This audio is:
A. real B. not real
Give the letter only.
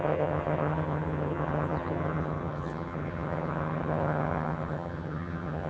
B